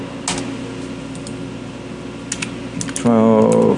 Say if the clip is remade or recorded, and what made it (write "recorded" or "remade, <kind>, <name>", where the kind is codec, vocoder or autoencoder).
recorded